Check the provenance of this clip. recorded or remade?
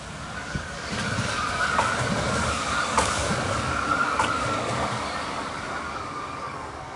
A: remade